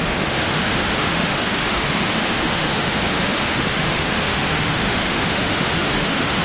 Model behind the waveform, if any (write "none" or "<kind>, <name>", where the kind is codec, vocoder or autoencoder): autoencoder, DAC-VAE